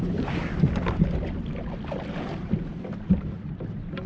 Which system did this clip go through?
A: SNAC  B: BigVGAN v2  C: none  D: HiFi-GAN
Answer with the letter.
C